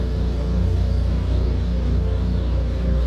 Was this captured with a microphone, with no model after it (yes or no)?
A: no